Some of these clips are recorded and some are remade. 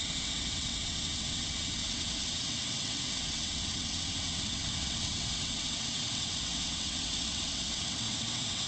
remade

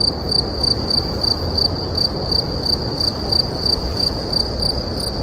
recorded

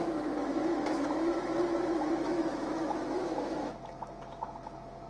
remade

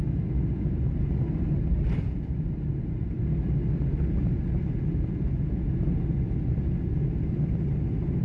recorded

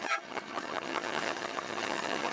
remade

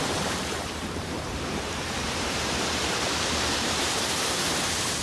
remade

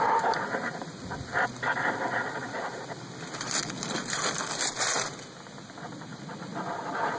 recorded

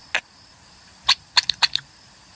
recorded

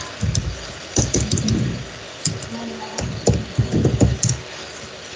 remade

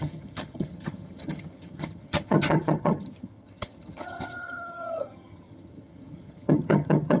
remade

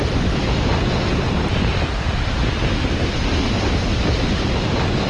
remade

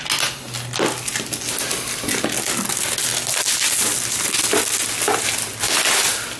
recorded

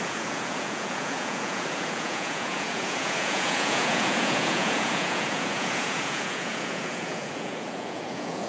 remade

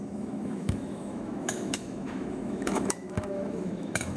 remade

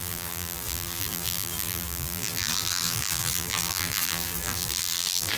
remade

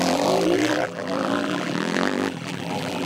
remade